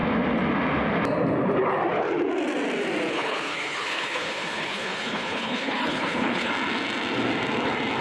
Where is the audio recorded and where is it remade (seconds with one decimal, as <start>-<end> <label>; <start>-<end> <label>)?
0.0-3.1 recorded; 3.1-6.5 remade; 6.5-8.0 recorded